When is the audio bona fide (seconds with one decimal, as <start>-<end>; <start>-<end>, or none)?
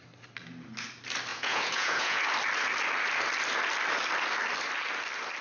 0.0-1.3; 2.2-5.4